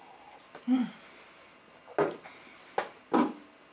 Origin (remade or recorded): recorded